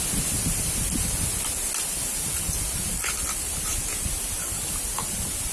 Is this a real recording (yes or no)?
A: yes